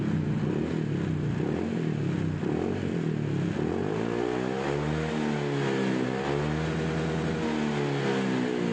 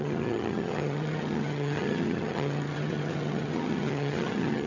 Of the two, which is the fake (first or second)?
second